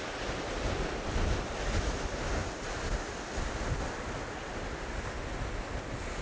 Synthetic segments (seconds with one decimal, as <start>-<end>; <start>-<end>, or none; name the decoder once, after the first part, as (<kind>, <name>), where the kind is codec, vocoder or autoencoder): none